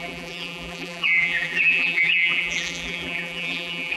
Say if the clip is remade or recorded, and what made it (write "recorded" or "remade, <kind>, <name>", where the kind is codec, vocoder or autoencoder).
remade, vocoder, BigVGAN v2